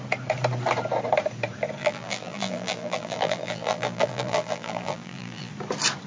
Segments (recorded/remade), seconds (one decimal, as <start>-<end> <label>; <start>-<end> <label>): 0.0-1.8 recorded; 1.8-5.5 remade; 5.5-6.1 recorded